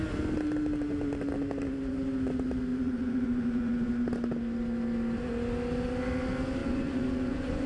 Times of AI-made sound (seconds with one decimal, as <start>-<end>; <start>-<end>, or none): 2.7-3.9; 6.6-7.7